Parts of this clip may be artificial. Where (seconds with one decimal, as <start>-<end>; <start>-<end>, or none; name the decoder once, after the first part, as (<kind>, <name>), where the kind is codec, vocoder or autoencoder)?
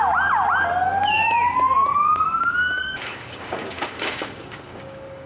1.9-5.3 (codec, DAC)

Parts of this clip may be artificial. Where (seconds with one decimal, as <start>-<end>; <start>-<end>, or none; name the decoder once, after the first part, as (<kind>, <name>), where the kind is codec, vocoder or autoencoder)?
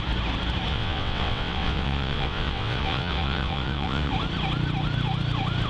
0.7-4.1 (vocoder, WaveNeXt)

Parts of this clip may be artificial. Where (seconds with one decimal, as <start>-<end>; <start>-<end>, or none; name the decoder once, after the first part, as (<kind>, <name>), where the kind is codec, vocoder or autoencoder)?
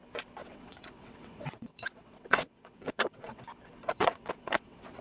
0.4-3.4 (vocoder, WaveNeXt); 3.8-5.0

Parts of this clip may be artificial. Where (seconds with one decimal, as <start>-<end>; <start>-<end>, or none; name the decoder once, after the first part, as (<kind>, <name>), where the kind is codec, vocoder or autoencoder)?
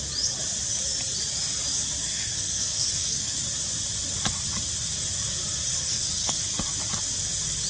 2.0-3.4 (codec, SNAC); 5.7-6.4